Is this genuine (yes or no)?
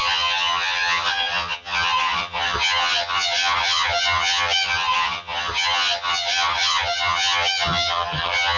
no